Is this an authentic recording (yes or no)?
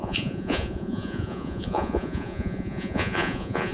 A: no